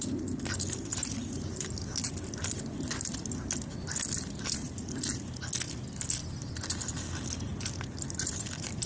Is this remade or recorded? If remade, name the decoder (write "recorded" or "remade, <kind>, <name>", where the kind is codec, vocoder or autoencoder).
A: recorded